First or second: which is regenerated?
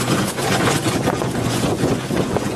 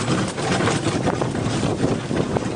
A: first